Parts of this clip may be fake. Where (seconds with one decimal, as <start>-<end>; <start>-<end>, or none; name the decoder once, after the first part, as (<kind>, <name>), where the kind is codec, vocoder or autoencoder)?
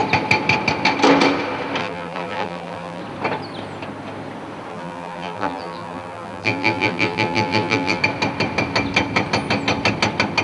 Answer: 1.8-3.0 (vocoder, BigVGAN v2); 4.7-8.0